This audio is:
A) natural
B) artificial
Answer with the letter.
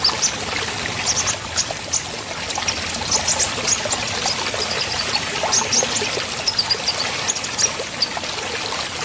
A